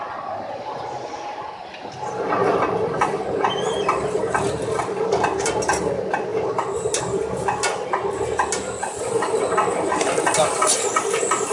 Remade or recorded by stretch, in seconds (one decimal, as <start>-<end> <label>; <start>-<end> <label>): 0.0-2.4 recorded; 2.4-5.5 remade; 5.5-6.3 recorded; 6.3-7.0 remade; 7.0-11.5 recorded